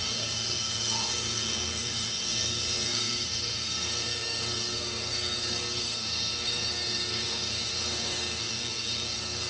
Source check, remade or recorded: remade